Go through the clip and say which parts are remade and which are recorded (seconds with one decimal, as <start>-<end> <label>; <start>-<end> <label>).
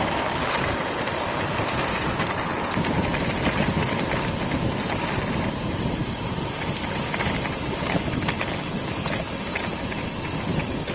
0.0-10.9 recorded